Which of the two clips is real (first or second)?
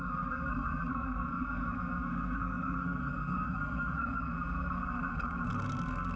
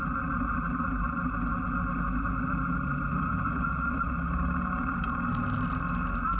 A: second